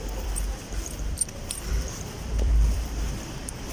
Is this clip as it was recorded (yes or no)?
no